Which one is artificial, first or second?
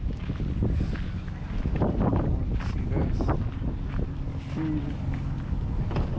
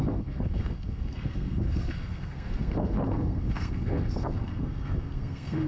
second